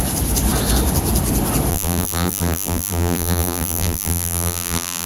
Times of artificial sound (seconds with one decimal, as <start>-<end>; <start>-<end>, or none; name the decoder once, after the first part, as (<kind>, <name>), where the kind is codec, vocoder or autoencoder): 1.7-5.1 (vocoder, BigVGAN v2)